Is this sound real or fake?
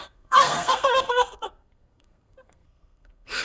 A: fake